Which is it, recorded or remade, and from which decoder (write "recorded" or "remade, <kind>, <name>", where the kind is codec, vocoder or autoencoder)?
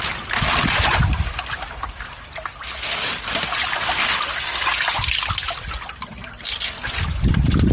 recorded